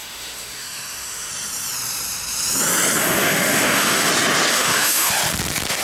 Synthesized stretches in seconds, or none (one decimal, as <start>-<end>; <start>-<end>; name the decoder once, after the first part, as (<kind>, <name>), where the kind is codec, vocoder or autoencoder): 0.0-1.3 (autoencoder, DAC-VAE); 3.0-4.1; 4.5-5.1